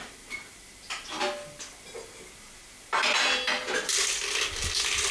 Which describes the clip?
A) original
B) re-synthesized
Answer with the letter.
A